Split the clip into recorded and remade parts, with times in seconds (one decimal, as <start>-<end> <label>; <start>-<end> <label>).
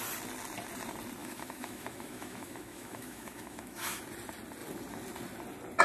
0.0-1.2 recorded; 1.2-4.0 remade; 4.0-5.8 recorded